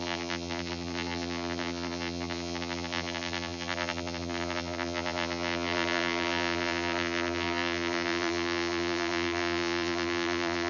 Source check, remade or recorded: remade